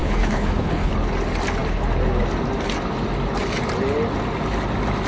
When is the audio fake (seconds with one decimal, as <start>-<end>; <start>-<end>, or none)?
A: 0.0-0.9

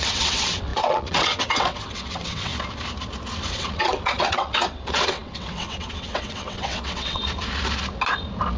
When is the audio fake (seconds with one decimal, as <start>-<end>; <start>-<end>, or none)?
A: 0.0-2.5; 3.5-7.2